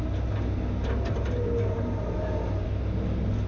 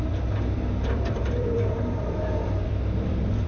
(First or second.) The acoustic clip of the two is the first